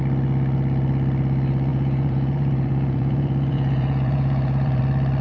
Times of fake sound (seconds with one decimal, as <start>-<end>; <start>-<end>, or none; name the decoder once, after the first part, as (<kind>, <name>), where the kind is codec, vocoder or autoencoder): 1.7-4.8 (vocoder, Vocos)